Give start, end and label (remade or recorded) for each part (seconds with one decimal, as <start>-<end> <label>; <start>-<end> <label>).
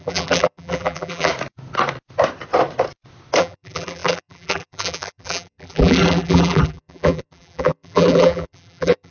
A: 0.0-1.3 remade; 1.3-3.4 recorded; 3.4-9.1 remade